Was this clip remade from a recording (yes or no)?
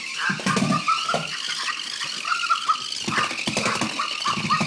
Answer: no